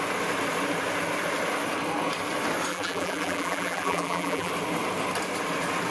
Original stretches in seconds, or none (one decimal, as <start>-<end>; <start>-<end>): 0.0-2.7; 4.5-5.9